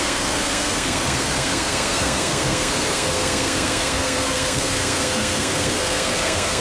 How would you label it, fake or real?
fake